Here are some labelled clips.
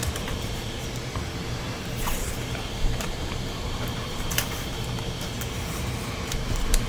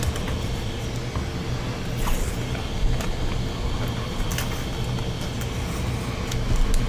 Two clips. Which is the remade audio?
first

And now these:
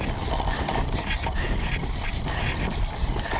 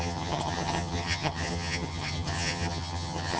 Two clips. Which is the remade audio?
second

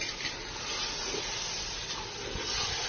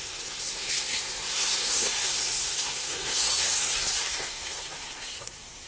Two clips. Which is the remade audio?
second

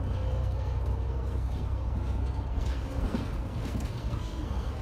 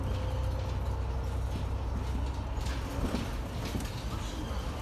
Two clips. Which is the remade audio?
first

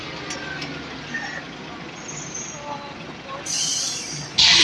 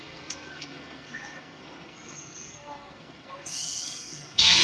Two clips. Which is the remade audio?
second